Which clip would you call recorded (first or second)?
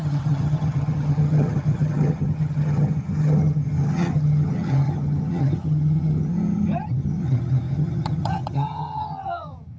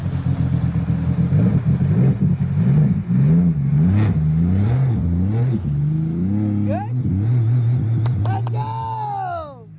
second